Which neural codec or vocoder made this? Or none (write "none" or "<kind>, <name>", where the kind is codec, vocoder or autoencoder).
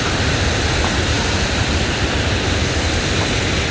none